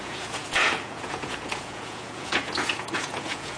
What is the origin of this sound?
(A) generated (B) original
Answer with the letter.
A